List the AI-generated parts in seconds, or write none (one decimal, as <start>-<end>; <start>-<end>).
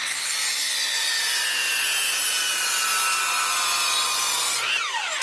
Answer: none